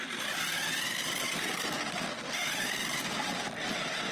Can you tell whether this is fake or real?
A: real